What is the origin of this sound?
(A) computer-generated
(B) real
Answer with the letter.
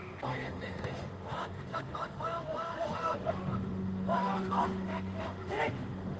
A